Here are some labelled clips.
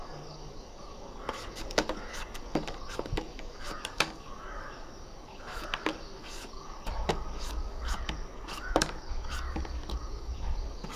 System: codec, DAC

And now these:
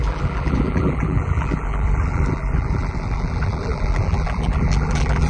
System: vocoder, BigVGAN v2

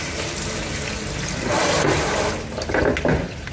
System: none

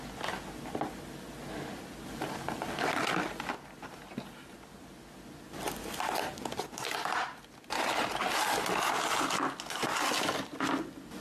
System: none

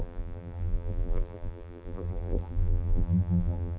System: vocoder, BigVGAN v2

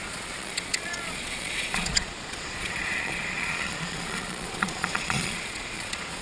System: vocoder, Vocos